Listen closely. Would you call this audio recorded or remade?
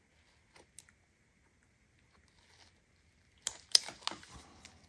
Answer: recorded